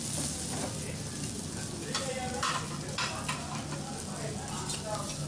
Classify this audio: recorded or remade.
recorded